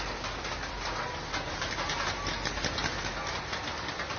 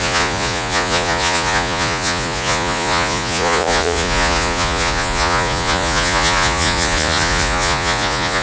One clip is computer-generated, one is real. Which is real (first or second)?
first